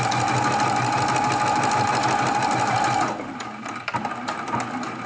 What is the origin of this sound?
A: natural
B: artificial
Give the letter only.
A